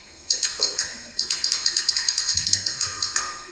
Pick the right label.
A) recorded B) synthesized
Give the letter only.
B